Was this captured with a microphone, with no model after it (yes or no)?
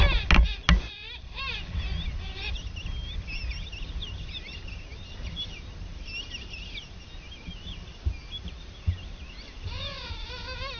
yes